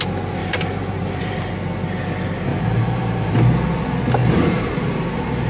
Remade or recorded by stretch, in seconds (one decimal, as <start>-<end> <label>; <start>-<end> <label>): 0.0-0.4 recorded; 0.4-1.5 remade; 1.5-2.5 recorded; 2.5-3.3 remade; 3.3-4.2 recorded; 4.2-5.5 remade